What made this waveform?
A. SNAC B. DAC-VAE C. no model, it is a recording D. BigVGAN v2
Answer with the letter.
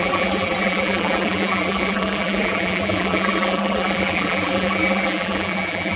D